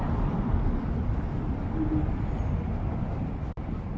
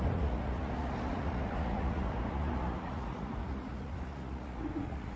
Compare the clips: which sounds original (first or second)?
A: first